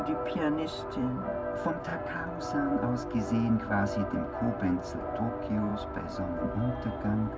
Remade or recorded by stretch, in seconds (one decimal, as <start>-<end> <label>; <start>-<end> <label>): 0.0-7.4 recorded